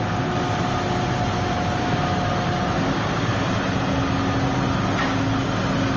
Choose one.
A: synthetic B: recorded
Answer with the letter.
B